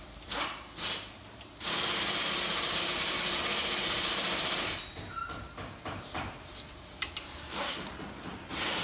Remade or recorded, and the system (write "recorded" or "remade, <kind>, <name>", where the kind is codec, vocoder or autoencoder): remade, vocoder, BigVGAN v2